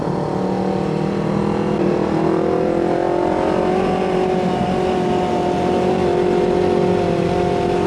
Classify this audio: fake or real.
real